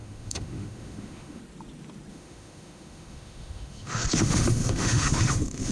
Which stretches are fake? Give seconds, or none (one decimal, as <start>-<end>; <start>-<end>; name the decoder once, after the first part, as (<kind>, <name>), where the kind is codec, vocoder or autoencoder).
0.0-1.4 (autoencoder, DAC-VAE); 2.1-5.7